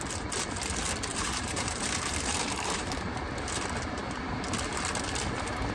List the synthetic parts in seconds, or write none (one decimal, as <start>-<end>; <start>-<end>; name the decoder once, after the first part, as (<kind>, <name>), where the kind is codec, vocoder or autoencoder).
1.1-3.2 (vocoder, BigVGAN v2)